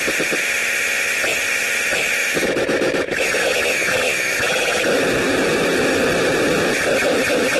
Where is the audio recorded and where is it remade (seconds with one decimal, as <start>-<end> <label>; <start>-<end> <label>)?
0.0-2.2 recorded; 2.2-4.8 remade; 4.8-7.6 recorded